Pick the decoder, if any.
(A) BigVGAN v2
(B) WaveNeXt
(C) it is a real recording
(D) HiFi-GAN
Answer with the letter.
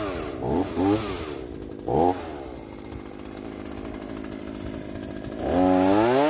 C